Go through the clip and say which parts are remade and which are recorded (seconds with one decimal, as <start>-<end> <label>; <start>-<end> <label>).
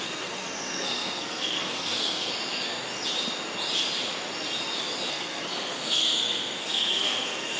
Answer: 0.0-2.3 remade; 2.3-5.1 recorded; 5.1-7.6 remade